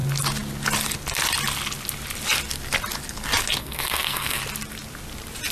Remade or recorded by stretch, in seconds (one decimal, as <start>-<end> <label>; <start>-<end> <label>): 0.0-3.6 recorded; 3.6-4.4 remade; 4.4-5.5 recorded